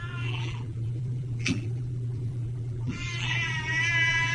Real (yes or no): no